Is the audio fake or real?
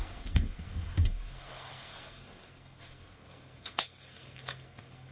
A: fake